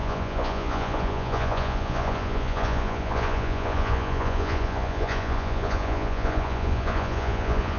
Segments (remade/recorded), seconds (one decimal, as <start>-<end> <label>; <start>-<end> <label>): 0.0-7.8 remade